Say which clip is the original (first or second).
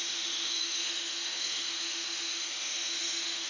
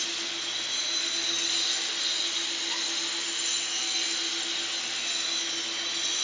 second